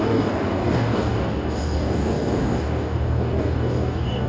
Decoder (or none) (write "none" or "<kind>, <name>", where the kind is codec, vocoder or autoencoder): codec, DAC